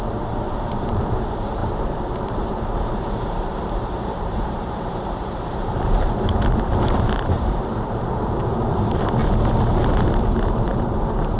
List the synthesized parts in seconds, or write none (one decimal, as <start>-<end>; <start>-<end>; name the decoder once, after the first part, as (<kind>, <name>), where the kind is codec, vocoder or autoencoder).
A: 0.0-11.4 (vocoder, BigVGAN v2)